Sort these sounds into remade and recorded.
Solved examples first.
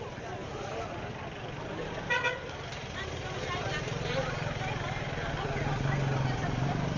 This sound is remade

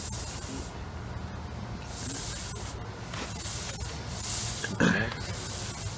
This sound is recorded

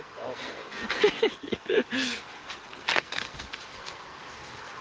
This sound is remade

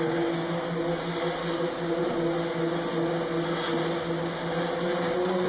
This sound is recorded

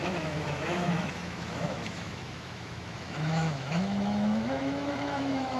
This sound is remade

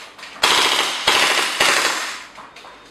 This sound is recorded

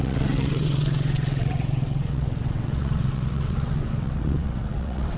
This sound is remade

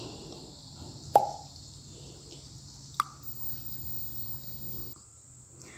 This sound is recorded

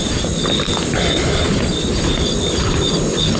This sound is recorded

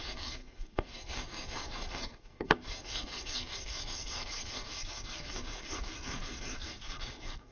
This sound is remade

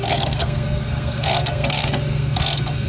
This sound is remade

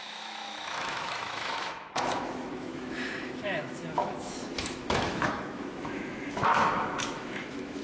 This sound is remade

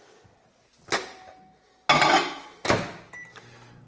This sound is recorded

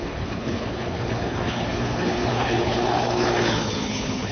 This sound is remade